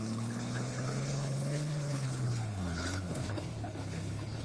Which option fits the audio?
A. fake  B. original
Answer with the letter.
A